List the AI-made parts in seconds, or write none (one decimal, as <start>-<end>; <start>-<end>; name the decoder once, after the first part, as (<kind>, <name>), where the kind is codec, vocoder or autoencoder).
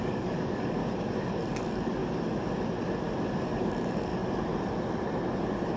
0.0-0.8 (codec, DAC); 1.3-2.0; 3.6-4.1